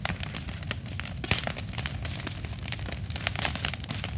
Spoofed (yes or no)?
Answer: no